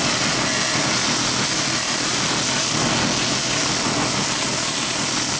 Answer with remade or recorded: recorded